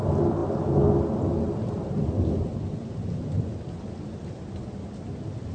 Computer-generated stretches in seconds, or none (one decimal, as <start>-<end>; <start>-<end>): none